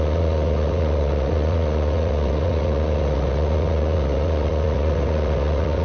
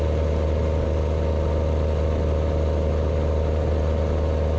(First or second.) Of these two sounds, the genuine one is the second